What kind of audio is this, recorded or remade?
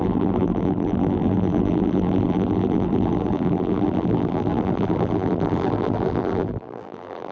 remade